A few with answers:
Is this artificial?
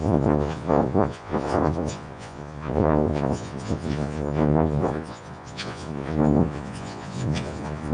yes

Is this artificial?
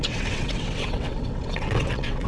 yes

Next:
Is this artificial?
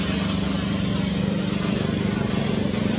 no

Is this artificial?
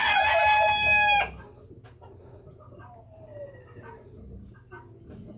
no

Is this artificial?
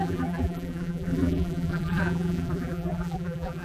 yes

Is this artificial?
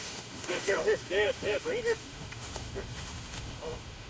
yes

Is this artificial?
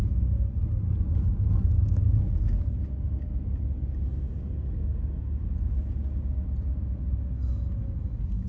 no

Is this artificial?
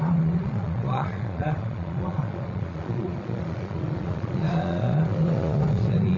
yes